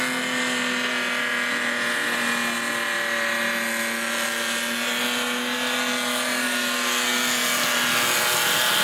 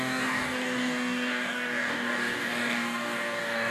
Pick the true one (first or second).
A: first